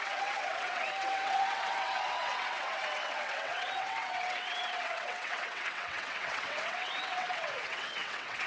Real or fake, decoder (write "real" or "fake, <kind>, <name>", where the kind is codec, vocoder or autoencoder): fake, vocoder, WaveNeXt